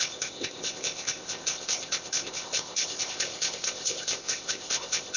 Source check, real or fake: fake